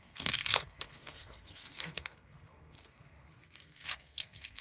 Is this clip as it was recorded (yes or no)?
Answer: no